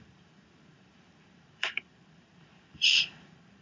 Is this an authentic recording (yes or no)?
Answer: no